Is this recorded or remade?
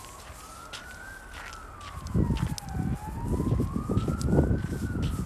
recorded